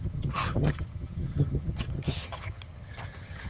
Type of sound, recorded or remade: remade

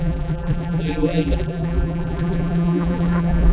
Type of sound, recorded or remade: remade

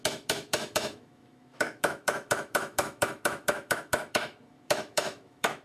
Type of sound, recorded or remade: remade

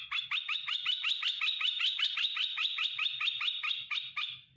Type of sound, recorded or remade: recorded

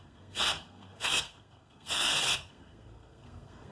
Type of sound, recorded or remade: remade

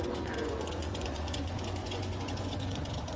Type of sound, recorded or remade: remade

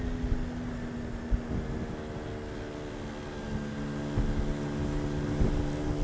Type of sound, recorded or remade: recorded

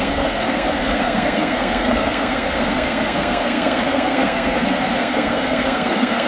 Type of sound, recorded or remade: remade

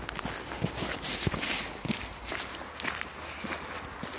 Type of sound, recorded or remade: recorded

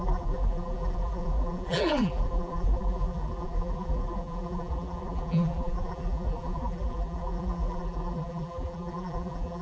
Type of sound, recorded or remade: remade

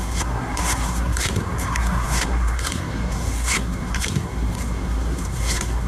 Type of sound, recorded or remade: remade